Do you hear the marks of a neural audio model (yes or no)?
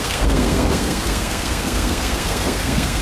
yes